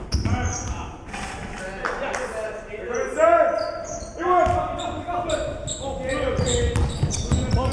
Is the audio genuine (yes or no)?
yes